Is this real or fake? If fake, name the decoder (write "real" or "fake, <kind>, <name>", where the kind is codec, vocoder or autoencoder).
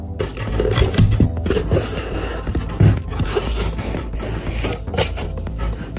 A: real